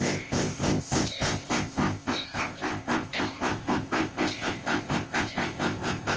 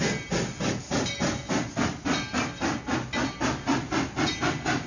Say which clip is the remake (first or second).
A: first